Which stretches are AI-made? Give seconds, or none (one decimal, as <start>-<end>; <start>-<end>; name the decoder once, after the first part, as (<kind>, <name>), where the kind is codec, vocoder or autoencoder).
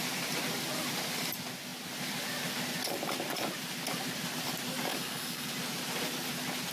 4.9-5.5 (codec, DAC)